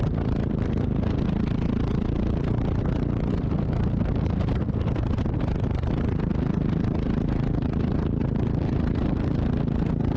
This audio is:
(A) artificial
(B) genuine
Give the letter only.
B